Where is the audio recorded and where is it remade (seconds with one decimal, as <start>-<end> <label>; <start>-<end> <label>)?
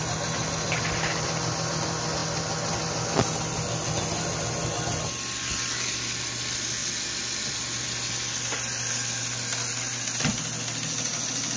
0.0-11.6 recorded